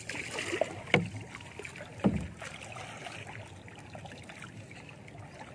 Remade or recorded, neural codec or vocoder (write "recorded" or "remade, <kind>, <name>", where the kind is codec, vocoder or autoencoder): recorded